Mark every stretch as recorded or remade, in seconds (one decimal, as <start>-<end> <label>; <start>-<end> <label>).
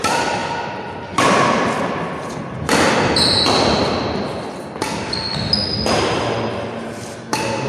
0.0-7.7 recorded